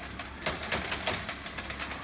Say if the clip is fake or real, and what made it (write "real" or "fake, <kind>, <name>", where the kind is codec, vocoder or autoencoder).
real